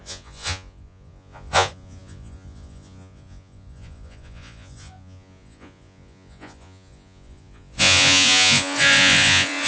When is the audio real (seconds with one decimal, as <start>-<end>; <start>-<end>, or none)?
none